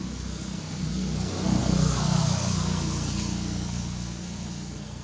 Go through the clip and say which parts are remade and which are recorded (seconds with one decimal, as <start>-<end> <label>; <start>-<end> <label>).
0.0-5.0 remade

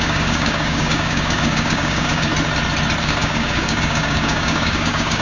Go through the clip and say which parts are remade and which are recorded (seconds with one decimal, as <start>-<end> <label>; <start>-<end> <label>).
0.0-2.3 remade; 2.3-3.0 recorded; 3.0-5.2 remade

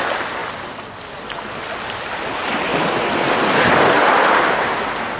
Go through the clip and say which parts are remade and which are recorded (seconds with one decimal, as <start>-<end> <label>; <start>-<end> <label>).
0.0-5.2 recorded

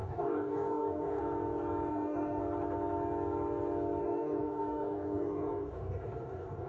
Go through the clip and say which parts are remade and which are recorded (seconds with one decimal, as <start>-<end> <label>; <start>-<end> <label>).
0.0-1.2 remade; 1.2-1.9 recorded; 1.9-2.4 remade; 2.4-4.0 recorded; 4.0-6.7 remade

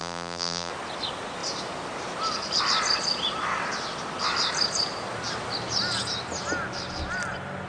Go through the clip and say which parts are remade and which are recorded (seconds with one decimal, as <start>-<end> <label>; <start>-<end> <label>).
0.0-0.7 remade; 0.7-7.7 recorded

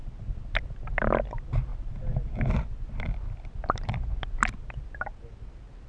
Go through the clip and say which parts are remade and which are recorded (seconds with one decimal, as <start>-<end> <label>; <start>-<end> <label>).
0.0-5.9 recorded

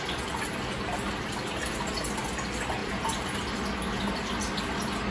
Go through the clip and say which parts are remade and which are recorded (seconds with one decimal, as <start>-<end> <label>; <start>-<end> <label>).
0.0-5.1 recorded